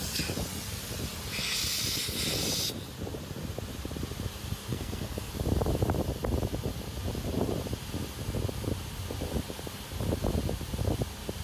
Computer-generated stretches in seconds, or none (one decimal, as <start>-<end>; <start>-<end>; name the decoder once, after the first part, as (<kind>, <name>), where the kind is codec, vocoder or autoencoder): 4.7-5.3 (codec, SNAC)